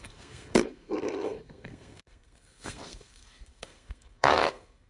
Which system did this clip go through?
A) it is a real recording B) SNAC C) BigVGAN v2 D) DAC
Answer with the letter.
B